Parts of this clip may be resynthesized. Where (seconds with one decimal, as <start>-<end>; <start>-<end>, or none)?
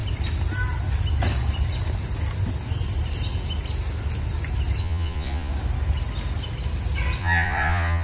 4.8-5.5; 7.2-8.0